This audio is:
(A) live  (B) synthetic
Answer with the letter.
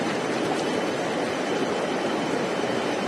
A